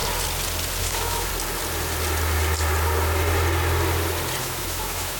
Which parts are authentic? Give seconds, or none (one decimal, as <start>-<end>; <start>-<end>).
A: 0.0-0.8; 1.3-4.4